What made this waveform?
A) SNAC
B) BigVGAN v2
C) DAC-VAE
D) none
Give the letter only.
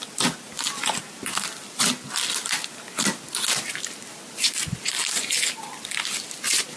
D